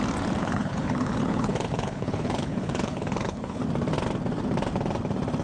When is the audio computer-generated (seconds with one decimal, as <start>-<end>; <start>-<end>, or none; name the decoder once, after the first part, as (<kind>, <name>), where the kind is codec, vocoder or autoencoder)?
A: 0.4-3.6 (codec, HILCodec)